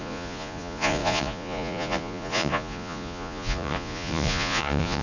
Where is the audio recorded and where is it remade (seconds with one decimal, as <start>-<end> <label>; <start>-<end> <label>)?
0.0-5.0 remade